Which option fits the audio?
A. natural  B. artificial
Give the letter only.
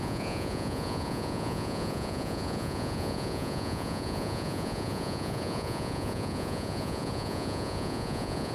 B